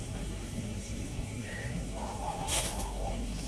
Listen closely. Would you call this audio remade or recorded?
remade